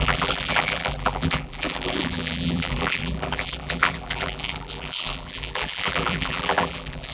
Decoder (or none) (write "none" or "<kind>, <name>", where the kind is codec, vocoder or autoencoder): vocoder, BigVGAN v2